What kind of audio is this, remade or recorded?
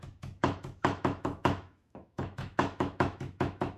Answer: remade